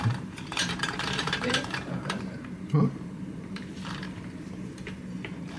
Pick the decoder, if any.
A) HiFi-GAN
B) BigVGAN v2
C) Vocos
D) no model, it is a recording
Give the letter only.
B